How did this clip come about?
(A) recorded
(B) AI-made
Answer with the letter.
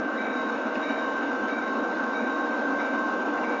B